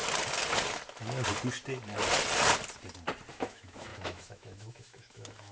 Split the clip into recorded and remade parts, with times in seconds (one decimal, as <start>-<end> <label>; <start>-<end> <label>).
0.0-3.3 recorded; 3.3-5.5 remade